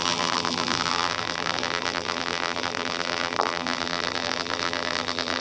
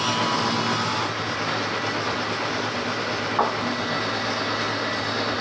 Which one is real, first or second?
second